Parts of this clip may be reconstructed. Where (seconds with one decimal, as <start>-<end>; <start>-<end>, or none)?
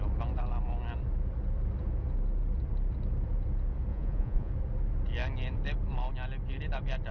3.9-4.5